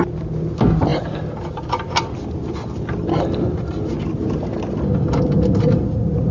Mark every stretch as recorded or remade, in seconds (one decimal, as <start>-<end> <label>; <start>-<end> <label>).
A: 0.0-0.9 recorded; 0.9-4.6 remade; 4.6-6.3 recorded